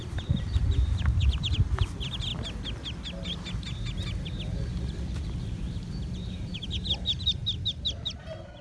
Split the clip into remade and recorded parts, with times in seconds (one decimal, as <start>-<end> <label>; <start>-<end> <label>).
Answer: 0.0-2.3 remade; 2.3-4.8 recorded; 4.8-7.4 remade; 7.4-8.2 recorded; 8.2-8.6 remade